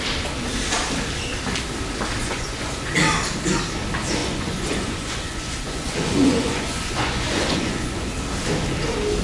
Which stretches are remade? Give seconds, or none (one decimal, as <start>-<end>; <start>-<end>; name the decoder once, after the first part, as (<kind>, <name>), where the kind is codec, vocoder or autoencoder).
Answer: 2.2-2.9 (vocoder, Vocos); 4.2-8.1